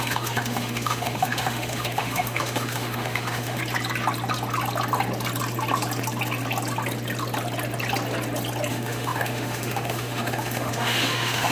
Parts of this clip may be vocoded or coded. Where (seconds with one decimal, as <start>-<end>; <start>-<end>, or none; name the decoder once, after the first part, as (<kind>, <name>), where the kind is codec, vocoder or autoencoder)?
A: 0.0-3.6 (autoencoder, DAC-VAE); 8.7-11.5

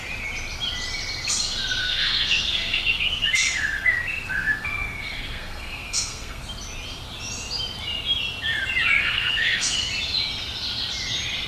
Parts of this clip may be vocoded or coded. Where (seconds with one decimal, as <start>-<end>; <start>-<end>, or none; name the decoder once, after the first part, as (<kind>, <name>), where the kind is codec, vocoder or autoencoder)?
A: 1.8-6.4 (codec, SNAC); 9.0-9.9

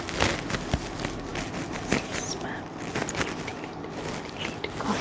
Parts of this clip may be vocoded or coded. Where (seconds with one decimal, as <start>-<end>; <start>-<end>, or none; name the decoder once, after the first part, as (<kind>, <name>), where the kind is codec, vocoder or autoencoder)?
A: none